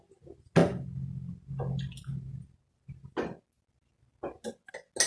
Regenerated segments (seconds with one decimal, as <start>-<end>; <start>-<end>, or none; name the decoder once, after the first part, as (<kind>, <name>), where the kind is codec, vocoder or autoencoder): none